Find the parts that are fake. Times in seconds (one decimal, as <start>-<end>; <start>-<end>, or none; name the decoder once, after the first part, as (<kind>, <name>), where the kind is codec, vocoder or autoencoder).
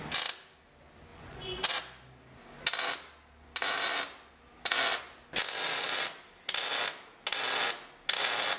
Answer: 1.1-1.7 (vocoder, Vocos)